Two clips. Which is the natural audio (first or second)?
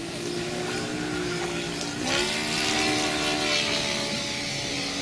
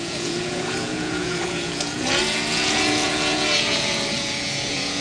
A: first